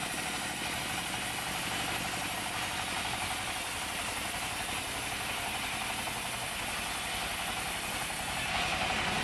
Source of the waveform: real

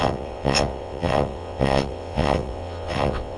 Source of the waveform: fake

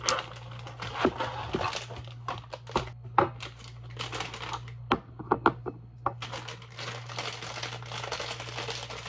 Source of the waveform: real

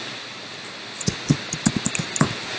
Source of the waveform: real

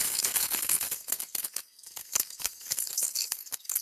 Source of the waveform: fake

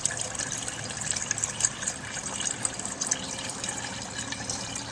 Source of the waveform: fake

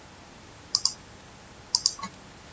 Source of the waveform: real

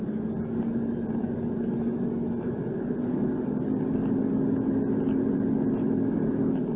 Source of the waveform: real